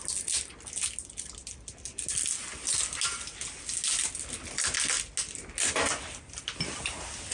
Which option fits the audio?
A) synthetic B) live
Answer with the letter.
B